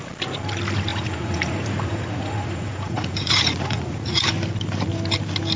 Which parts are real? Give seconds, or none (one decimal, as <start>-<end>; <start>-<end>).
0.0-0.9; 4.3-5.6